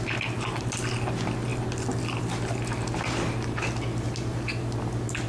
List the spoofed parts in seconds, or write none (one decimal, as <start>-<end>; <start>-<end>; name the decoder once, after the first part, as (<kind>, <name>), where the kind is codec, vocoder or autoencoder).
none